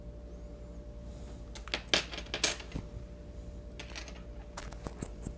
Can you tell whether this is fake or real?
real